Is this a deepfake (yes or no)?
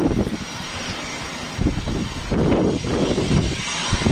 no